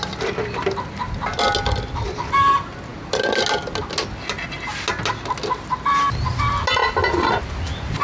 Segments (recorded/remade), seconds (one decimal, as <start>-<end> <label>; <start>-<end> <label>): 0.0-8.0 recorded